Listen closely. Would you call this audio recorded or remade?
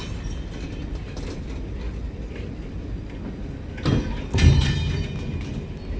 recorded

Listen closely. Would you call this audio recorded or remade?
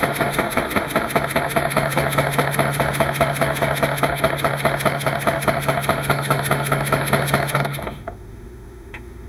remade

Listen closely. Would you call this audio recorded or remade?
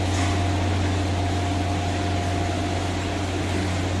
recorded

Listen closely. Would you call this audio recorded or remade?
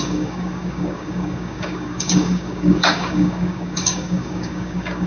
remade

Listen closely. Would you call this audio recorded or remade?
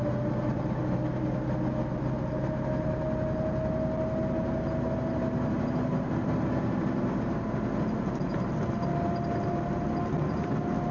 recorded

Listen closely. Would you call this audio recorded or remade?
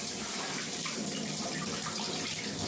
remade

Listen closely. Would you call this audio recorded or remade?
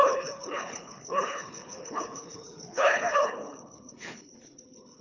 remade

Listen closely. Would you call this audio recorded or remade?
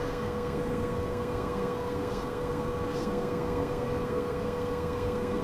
remade